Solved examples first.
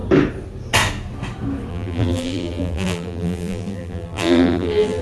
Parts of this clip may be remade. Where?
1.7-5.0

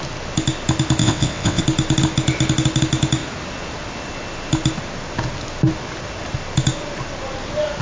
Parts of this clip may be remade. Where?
1.0-1.6

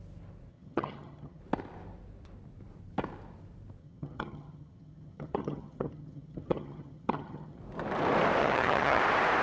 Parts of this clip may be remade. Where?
0.5-1.4; 3.8-7.6; 8.4-9.0

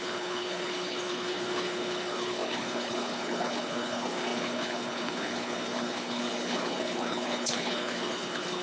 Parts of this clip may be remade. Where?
0.0-8.6

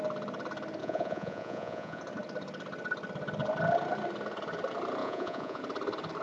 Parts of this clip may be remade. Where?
0.8-2.0; 5.0-5.6